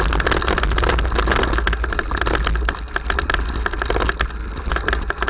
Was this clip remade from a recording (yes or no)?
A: no